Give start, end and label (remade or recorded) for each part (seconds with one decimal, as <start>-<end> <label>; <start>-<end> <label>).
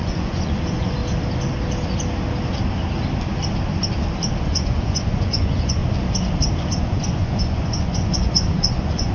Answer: 0.0-1.0 remade; 1.0-4.4 recorded; 4.4-5.8 remade; 5.8-6.7 recorded; 6.7-9.1 remade